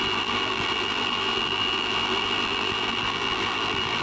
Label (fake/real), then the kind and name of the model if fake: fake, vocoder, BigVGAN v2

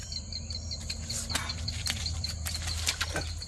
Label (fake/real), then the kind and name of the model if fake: real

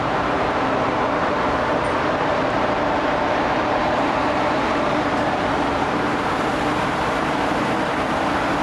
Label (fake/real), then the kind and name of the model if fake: fake, vocoder, BigVGAN v2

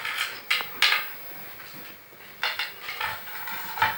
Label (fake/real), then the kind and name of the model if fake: real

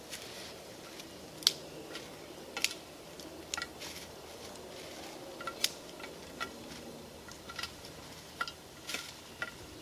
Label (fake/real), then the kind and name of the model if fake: real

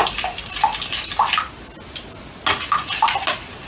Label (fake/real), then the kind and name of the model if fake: real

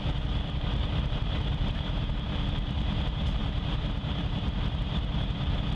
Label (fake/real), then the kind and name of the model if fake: fake, vocoder, BigVGAN v2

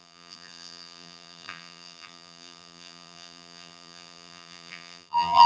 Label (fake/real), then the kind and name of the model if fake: fake, vocoder, BigVGAN v2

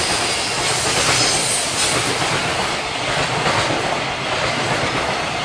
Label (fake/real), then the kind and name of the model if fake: real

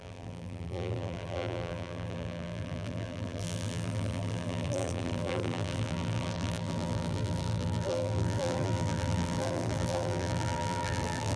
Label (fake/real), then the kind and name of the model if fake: fake, vocoder, BigVGAN v2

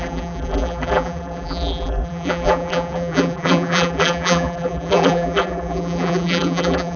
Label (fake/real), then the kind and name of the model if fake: fake, vocoder, BigVGAN v2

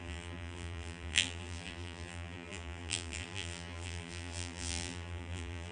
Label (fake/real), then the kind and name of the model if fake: fake, vocoder, BigVGAN v2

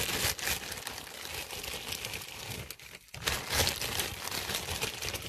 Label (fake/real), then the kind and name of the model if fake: real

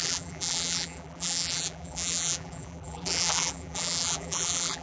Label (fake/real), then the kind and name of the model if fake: fake, vocoder, BigVGAN v2